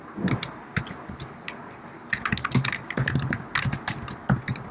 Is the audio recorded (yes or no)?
yes